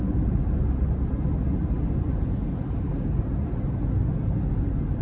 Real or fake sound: real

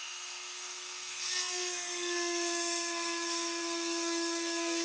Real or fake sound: fake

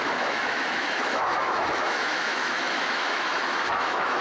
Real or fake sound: fake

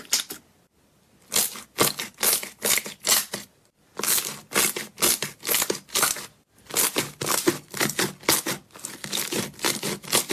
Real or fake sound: real